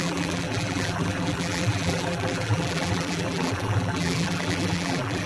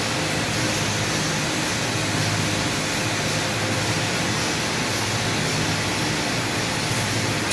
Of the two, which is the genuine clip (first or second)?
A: second